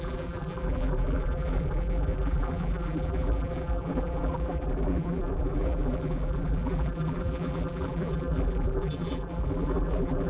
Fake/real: fake